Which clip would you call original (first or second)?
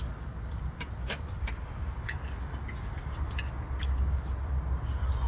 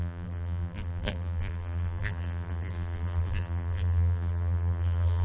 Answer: first